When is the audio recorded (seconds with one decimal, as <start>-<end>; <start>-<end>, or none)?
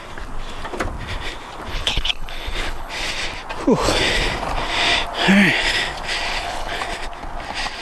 0.0-1.7; 2.9-6.3; 6.8-7.8